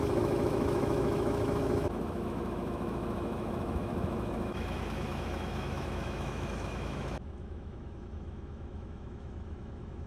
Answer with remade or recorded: remade